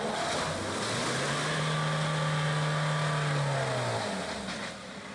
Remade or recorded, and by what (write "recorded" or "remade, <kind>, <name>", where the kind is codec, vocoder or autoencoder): recorded